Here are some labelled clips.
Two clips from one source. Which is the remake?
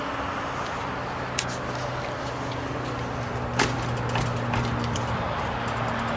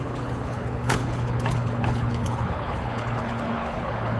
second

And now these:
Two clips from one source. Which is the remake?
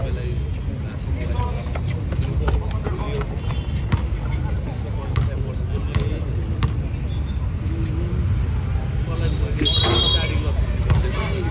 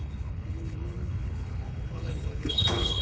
second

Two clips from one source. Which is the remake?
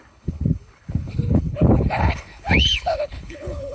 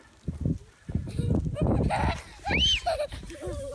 first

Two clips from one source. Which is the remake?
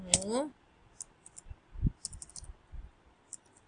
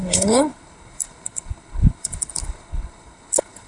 second